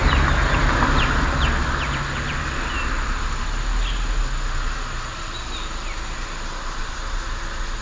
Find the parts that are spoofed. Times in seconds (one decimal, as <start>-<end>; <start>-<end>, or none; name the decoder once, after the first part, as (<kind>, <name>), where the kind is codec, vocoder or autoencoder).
0.0-3.5 (vocoder, BigVGAN v2)